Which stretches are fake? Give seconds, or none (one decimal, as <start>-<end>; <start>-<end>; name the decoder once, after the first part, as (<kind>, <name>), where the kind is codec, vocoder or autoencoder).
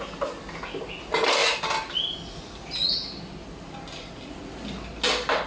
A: none